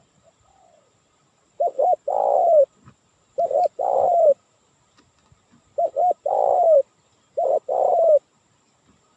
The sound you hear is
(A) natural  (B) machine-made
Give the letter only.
B